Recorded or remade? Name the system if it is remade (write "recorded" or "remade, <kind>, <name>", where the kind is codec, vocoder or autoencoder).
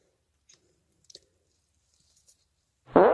remade, vocoder, BigVGAN v2